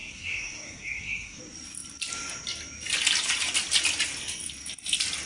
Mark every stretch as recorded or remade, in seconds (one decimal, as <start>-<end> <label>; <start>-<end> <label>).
0.0-1.4 remade; 1.4-5.3 recorded